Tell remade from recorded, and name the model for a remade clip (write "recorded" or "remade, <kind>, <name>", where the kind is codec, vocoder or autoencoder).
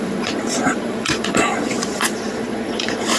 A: remade, vocoder, Vocos